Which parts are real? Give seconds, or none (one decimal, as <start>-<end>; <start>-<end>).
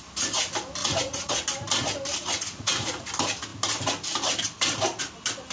0.0-0.8; 1.3-2.2; 3.0-5.5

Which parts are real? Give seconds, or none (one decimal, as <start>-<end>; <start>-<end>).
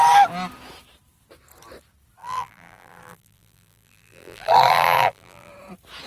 0.0-2.2; 5.5-6.1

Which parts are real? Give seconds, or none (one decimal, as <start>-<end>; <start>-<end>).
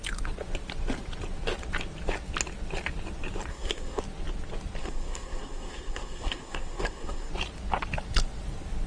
0.0-3.5; 4.0-4.8; 7.3-8.9